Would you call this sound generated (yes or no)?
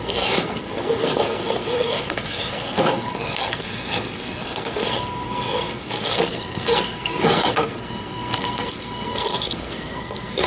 yes